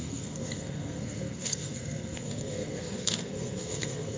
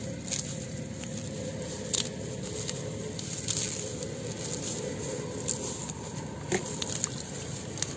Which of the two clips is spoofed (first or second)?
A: first